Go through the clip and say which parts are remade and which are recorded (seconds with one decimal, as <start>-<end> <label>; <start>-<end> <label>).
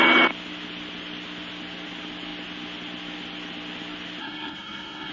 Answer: 0.0-4.2 recorded; 4.2-5.1 remade